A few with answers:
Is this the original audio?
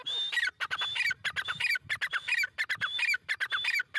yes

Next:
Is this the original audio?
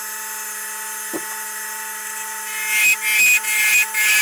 yes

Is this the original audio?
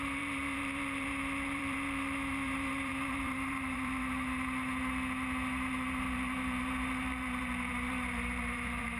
no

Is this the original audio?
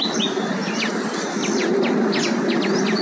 yes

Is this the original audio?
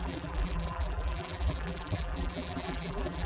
no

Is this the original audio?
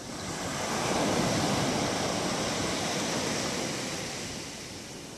no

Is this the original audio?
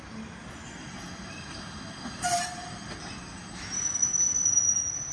yes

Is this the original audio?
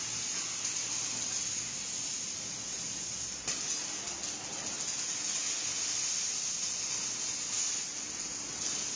yes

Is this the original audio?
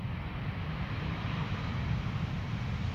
yes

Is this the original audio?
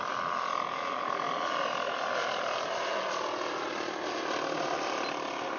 yes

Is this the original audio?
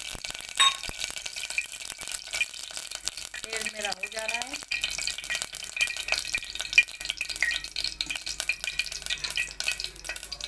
yes